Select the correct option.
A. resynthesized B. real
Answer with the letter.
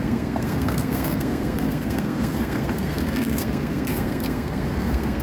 A